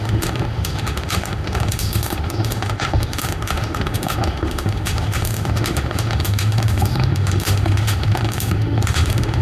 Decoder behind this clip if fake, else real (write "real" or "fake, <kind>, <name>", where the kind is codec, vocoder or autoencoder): fake, autoencoder, DAC-VAE